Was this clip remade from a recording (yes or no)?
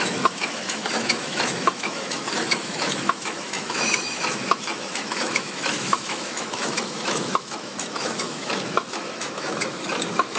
yes